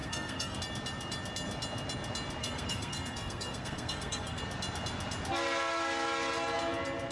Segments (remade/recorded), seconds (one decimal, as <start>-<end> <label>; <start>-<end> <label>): 0.0-0.6 remade; 0.6-2.4 recorded; 2.4-4.4 remade; 4.4-7.1 recorded